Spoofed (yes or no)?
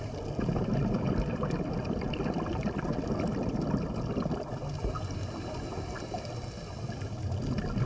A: no